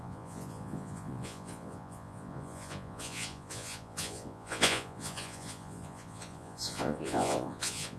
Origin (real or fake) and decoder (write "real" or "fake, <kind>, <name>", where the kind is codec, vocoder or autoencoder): fake, vocoder, Vocos